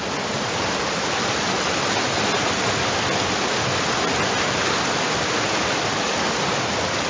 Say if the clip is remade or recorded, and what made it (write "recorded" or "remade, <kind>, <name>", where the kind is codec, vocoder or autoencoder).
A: recorded